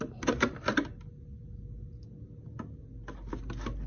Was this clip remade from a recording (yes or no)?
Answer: no